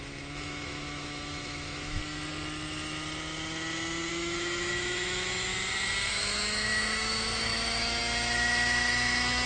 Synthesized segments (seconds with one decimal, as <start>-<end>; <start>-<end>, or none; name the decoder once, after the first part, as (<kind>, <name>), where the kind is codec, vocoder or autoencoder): 0.0-2.0 (autoencoder, DAC-VAE); 4.1-5.5; 6.1-9.5